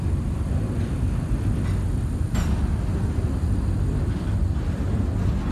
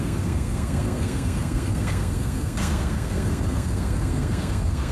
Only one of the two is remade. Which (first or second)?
second